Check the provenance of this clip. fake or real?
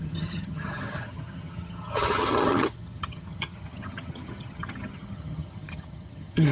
fake